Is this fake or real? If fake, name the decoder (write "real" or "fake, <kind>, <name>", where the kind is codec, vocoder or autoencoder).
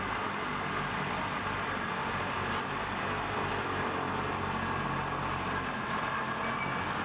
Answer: real